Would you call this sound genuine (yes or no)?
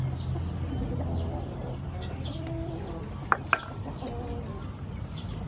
yes